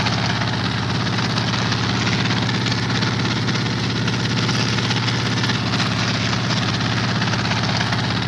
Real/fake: real